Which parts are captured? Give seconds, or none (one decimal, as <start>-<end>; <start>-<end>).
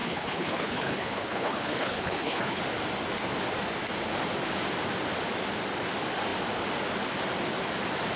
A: 2.6-8.2